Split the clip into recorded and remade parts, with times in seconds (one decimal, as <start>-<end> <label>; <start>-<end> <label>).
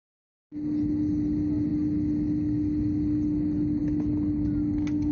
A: 0.0-5.1 recorded